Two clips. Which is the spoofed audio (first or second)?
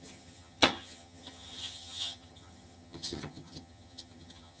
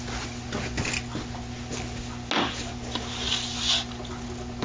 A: first